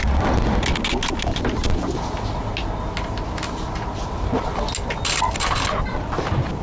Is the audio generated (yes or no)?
no